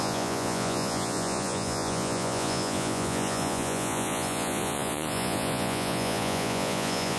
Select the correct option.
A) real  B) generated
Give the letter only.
B